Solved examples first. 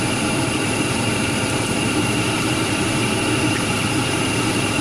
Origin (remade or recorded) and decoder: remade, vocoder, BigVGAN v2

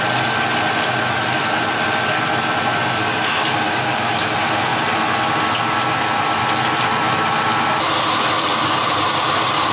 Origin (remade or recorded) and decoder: recorded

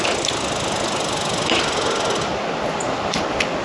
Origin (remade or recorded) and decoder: recorded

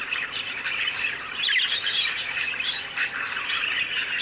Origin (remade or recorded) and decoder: remade, vocoder, BigVGAN v2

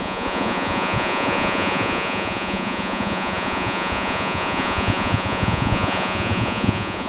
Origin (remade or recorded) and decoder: remade, vocoder, Vocos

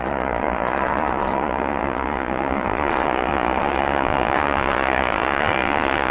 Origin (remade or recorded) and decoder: remade, vocoder, Vocos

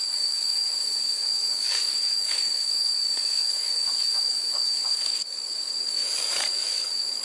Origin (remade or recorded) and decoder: remade, codec, DAC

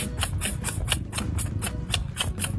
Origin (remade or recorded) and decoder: recorded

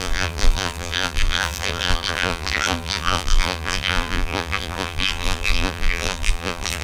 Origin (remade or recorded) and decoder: remade, vocoder, BigVGAN v2